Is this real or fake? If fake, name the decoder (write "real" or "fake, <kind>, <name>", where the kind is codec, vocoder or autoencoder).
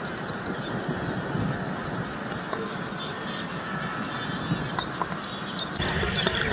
real